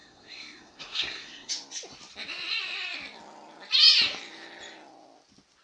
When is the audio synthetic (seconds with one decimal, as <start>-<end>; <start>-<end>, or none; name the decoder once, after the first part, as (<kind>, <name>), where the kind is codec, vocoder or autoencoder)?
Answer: 0.0-1.5 (codec, SNAC)